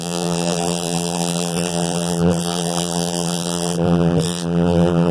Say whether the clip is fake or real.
fake